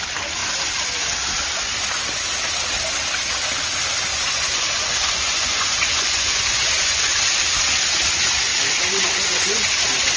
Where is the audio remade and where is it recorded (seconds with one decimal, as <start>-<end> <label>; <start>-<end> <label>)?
0.0-4.1 recorded; 4.1-7.0 remade; 7.0-8.5 recorded; 8.5-9.7 remade; 9.7-10.2 recorded

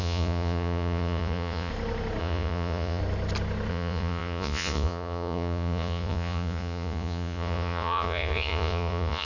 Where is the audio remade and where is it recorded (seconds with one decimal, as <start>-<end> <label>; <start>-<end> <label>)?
0.0-1.7 remade; 1.7-2.2 recorded; 2.2-3.0 remade; 3.0-3.7 recorded; 3.7-9.2 remade

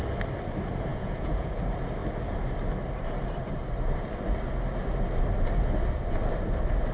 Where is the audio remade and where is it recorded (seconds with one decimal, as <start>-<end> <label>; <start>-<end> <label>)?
0.0-0.9 recorded; 0.9-1.6 remade; 1.6-6.9 recorded

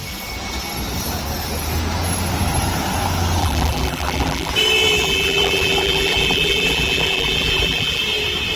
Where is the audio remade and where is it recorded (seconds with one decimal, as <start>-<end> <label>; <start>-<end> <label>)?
0.0-3.4 recorded; 3.4-4.5 remade; 4.5-4.9 recorded; 4.9-8.0 remade; 8.0-8.6 recorded

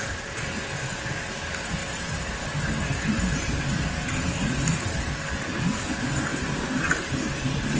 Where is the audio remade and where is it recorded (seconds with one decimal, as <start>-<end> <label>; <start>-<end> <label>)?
0.0-7.8 recorded